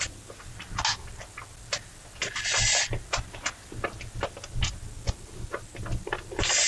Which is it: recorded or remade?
recorded